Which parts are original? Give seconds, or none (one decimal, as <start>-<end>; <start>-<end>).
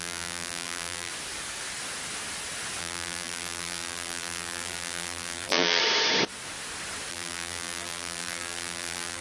1.1-2.8; 5.8-7.1